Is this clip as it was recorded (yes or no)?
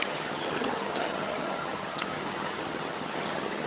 no